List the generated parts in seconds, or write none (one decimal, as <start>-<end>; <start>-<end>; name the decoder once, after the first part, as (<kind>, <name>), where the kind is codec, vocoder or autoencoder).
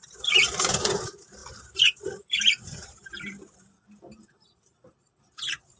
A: 0.0-5.8 (vocoder, BigVGAN v2)